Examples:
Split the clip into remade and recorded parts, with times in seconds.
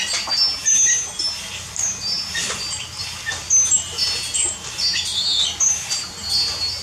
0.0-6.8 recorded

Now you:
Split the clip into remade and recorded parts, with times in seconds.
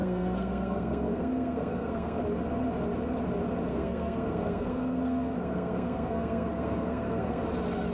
0.0-2.2 remade; 2.2-3.7 recorded; 3.7-7.4 remade; 7.4-7.9 recorded